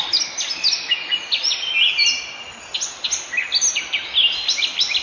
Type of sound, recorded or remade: recorded